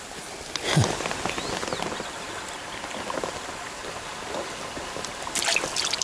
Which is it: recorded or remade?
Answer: recorded